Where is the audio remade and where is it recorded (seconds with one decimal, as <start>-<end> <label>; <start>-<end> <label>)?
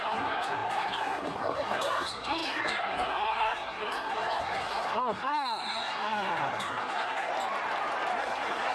0.0-7.3 remade; 7.3-8.2 recorded; 8.2-8.7 remade